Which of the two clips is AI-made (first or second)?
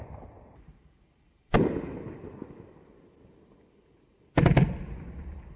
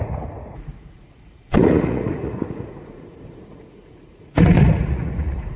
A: second